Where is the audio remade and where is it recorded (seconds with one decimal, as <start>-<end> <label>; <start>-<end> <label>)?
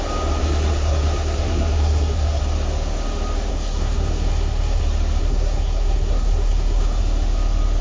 0.0-0.4 recorded; 0.4-2.4 remade; 2.4-3.5 recorded; 3.5-4.8 remade; 4.8-5.2 recorded; 5.2-7.0 remade; 7.0-7.8 recorded